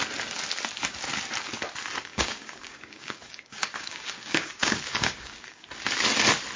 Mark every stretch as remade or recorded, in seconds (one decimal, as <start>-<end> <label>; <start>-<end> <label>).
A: 0.0-2.1 recorded; 2.1-5.7 remade; 5.7-6.6 recorded